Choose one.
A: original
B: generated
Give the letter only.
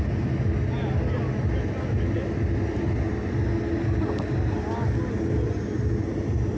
A